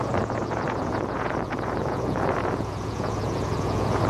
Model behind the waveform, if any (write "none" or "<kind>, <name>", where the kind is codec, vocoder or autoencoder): vocoder, Vocos